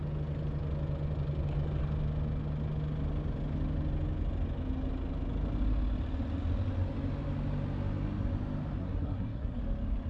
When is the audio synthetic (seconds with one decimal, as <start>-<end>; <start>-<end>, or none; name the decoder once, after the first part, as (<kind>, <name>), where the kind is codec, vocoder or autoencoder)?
8.8-9.6 (codec, SNAC)